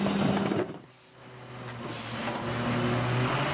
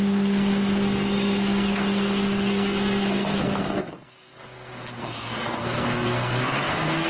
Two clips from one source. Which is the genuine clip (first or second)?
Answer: first